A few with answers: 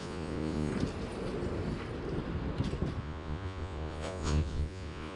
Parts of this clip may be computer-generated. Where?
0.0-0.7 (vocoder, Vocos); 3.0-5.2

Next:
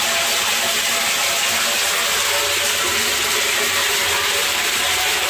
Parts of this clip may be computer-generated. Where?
4.4-5.3 (vocoder, BigVGAN v2)